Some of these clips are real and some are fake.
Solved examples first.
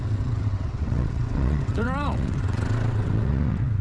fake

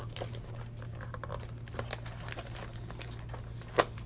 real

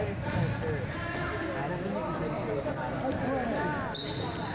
real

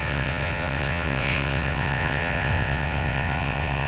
fake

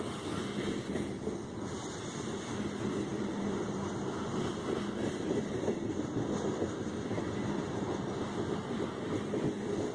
real